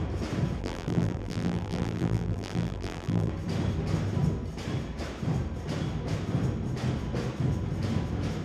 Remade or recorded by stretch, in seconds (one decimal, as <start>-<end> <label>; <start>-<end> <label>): 0.0-0.6 recorded; 0.6-3.3 remade; 3.3-8.4 recorded